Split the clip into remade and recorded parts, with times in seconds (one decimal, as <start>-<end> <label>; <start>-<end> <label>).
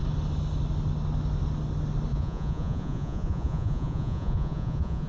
0.0-2.1 recorded; 2.1-5.1 remade